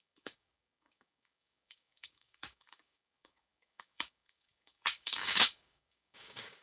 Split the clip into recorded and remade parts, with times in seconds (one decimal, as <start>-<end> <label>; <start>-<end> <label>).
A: 0.0-6.6 remade